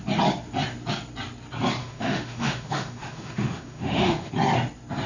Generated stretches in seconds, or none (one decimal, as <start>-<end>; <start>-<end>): 1.8-4.3